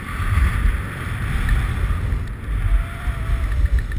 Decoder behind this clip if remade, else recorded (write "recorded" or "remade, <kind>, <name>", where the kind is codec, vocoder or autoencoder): recorded